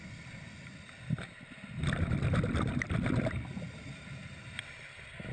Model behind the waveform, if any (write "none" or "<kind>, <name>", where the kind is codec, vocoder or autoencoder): none